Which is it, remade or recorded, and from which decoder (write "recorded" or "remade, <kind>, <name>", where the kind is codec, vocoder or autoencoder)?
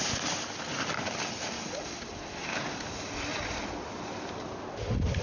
recorded